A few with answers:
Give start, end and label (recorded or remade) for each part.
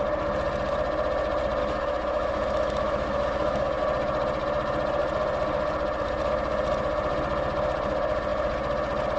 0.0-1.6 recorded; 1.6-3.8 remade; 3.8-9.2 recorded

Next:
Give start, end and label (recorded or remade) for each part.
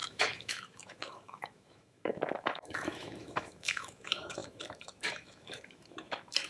0.0-6.5 remade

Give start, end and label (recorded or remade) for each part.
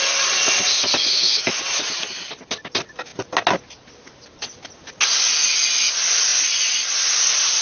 0.0-1.0 recorded; 1.0-1.6 remade; 1.6-7.6 recorded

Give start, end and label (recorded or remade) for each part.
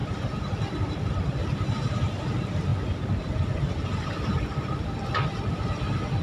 0.0-6.2 recorded